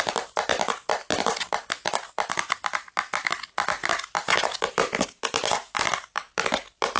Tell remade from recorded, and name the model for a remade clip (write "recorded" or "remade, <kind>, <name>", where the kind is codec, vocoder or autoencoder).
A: recorded